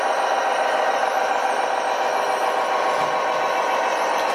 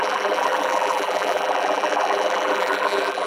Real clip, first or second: first